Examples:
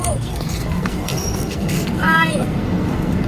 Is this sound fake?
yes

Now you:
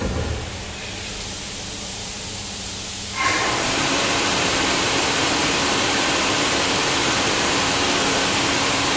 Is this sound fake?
yes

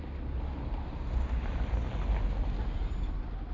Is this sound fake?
no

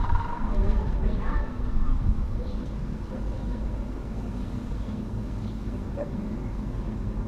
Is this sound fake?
yes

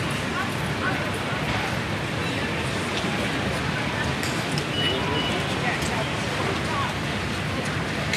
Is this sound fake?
no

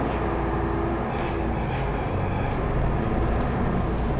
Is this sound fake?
no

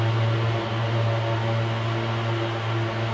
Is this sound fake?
no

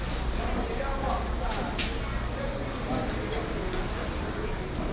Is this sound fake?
no